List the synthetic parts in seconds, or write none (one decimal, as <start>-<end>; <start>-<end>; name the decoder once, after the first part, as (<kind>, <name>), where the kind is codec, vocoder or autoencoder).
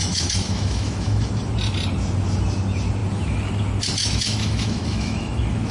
0.0-1.3 (autoencoder, DAC-VAE); 4.0-5.7